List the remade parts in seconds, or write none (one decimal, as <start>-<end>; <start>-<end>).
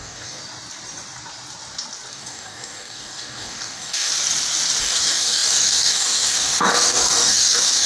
0.0-0.4; 2.1-4.1; 4.8-7.9